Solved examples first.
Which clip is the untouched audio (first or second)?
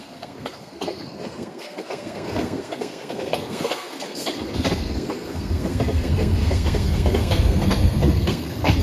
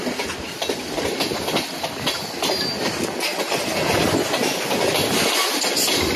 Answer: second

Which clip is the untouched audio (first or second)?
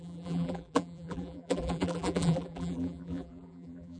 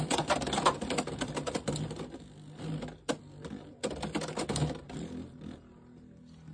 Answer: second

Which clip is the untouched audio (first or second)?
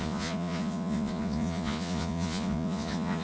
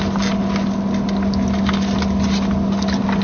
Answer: second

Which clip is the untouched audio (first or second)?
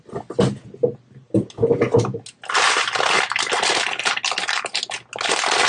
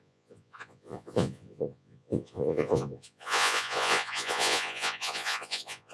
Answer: first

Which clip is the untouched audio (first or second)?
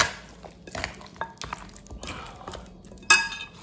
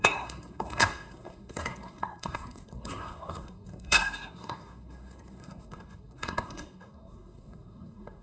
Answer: first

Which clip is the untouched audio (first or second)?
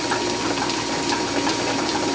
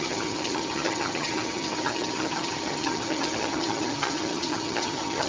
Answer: first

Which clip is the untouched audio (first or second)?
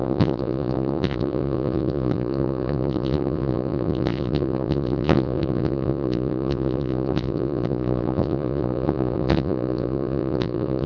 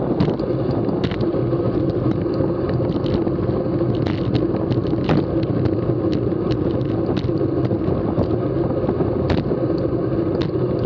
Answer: second